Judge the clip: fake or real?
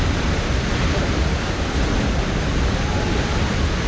real